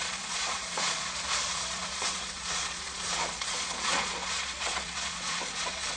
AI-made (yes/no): yes